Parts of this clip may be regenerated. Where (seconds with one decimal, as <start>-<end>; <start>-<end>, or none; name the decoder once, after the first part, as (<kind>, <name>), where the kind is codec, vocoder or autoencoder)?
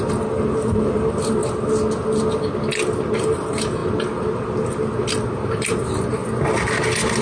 0.0-1.4 (vocoder, BigVGAN v2); 3.1-3.8; 5.1-6.2